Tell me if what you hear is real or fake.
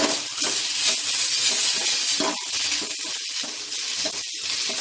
real